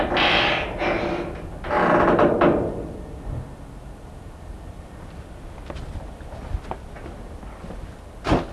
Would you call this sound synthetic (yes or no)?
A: no